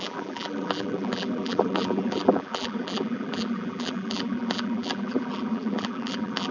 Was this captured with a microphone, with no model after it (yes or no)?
no